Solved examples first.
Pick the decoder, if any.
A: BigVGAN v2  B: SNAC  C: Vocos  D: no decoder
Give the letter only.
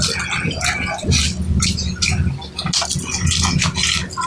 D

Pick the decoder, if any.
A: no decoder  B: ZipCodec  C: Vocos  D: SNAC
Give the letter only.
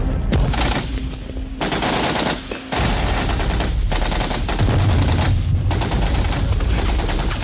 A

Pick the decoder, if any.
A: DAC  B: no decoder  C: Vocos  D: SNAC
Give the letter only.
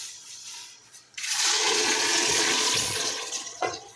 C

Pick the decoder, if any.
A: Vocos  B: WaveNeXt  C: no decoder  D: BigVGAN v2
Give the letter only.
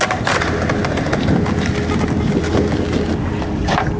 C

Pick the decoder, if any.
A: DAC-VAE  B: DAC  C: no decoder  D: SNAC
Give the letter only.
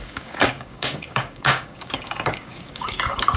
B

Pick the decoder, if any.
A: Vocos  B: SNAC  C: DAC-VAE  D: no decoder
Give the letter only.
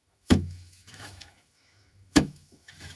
C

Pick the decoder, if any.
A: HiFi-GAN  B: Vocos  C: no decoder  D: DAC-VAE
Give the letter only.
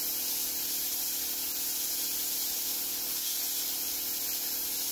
C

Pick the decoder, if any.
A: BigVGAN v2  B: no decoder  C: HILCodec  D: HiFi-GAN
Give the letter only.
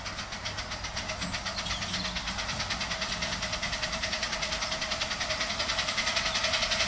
B